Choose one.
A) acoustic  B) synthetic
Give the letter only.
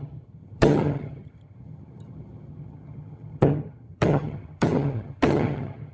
B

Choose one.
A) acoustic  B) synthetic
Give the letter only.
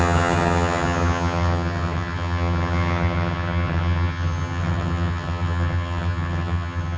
B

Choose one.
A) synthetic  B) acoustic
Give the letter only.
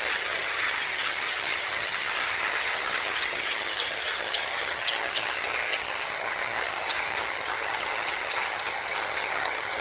A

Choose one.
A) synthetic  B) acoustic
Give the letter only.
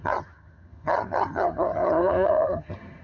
A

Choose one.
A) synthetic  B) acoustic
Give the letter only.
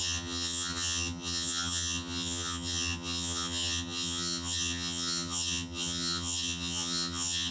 A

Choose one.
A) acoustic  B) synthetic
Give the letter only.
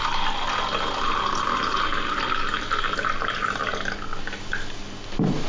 A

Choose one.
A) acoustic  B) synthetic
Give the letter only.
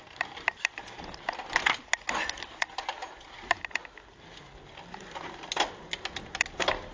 A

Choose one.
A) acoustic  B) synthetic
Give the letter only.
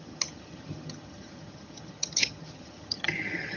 B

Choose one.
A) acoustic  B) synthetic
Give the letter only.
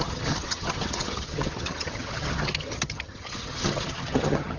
B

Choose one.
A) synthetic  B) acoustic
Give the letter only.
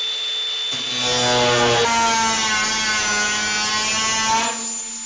B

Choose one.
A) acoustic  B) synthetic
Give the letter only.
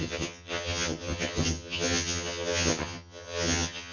B